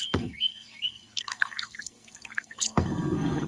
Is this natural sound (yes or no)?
no